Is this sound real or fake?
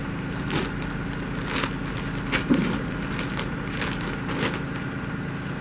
real